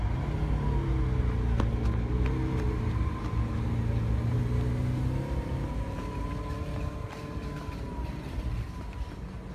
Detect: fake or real real